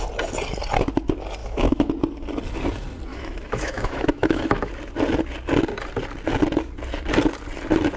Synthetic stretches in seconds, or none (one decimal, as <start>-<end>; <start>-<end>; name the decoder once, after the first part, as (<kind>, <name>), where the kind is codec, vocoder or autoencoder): 1.4-1.9 (autoencoder, DAC-VAE); 3.1-4.7